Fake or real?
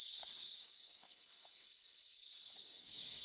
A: fake